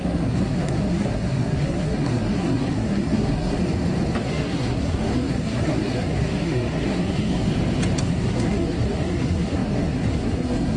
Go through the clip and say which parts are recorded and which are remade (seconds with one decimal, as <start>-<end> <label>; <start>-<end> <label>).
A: 0.0-3.6 remade; 3.6-4.2 recorded; 4.2-7.5 remade; 7.5-8.0 recorded; 8.0-10.8 remade